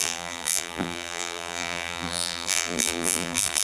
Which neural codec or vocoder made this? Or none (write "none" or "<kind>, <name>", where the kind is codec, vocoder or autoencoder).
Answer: vocoder, BigVGAN v2